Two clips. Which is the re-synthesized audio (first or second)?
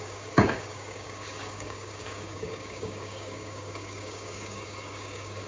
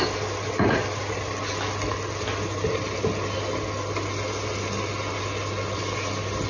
first